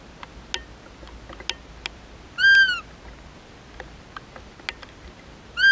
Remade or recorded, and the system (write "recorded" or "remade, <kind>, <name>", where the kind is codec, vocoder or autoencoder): recorded